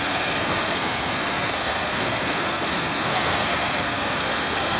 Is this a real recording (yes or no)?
no